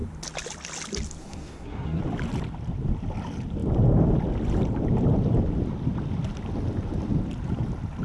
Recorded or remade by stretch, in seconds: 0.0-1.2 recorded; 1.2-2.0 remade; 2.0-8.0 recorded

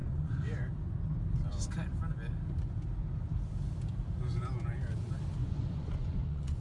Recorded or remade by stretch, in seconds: 0.0-0.6 remade; 0.6-5.4 recorded; 5.4-6.6 remade

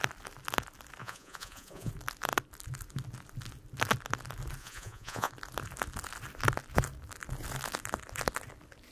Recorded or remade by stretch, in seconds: 0.0-1.0 recorded; 1.0-1.9 remade; 1.9-4.6 recorded; 4.6-5.3 remade; 5.3-8.9 recorded

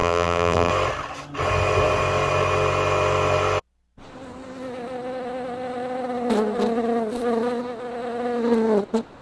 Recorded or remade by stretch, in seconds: 0.0-0.7 remade; 0.7-9.2 recorded